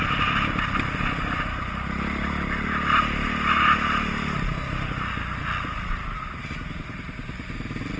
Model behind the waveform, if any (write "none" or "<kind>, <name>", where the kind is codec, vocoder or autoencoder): none